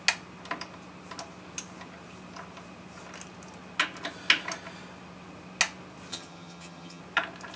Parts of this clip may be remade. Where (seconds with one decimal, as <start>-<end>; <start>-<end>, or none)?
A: 6.1-7.0